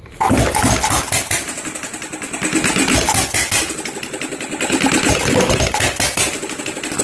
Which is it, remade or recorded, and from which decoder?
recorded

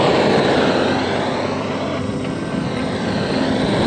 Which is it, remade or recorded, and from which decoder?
remade, vocoder, BigVGAN v2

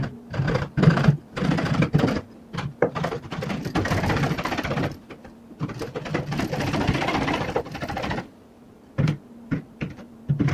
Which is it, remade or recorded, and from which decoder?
recorded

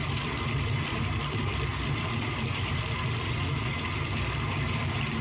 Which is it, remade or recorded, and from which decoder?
recorded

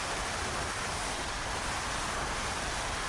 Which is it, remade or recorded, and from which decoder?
recorded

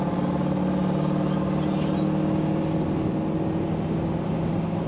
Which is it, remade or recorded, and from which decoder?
recorded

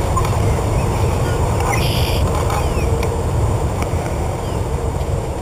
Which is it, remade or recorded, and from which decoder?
remade, vocoder, BigVGAN v2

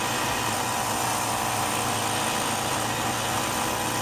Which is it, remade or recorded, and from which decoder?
recorded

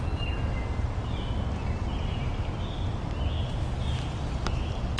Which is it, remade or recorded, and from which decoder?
recorded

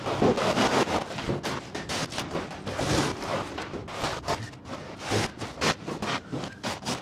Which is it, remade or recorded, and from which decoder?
recorded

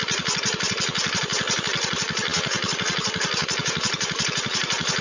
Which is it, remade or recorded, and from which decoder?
recorded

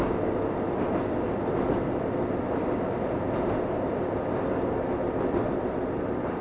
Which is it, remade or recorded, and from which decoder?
recorded